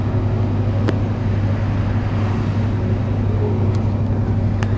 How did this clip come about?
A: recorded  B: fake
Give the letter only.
A